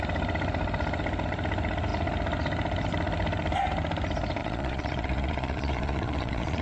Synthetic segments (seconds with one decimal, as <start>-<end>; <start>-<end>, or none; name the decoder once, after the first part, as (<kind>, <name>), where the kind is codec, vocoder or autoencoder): 4.4-6.6 (vocoder, Vocos)